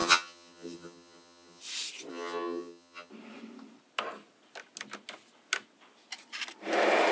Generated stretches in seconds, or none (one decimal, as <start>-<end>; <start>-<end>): 0.0-1.6; 2.1-3.1